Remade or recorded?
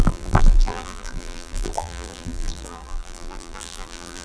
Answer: remade